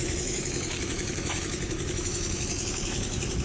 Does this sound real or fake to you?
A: fake